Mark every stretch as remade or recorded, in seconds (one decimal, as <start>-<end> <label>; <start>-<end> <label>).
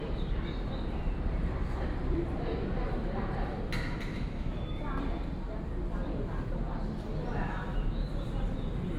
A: 0.0-4.1 recorded; 4.1-4.8 remade; 4.8-7.3 recorded; 7.3-8.1 remade; 8.1-9.0 recorded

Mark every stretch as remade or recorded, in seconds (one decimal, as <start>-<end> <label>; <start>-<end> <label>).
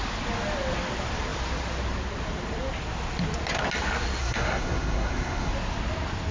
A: 0.0-4.2 recorded; 4.2-5.5 remade; 5.5-6.3 recorded